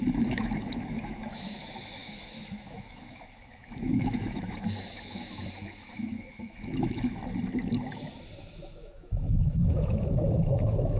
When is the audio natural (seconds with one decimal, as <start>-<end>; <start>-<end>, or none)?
7.2-8.5